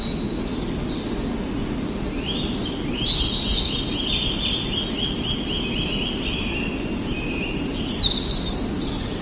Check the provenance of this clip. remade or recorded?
recorded